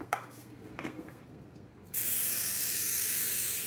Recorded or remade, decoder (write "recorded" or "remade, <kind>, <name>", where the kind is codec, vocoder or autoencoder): remade, codec, SNAC